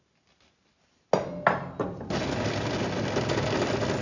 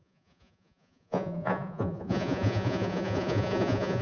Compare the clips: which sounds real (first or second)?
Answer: first